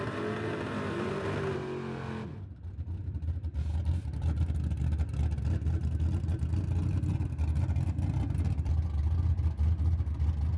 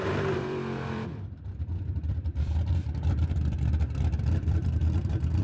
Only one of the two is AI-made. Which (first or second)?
second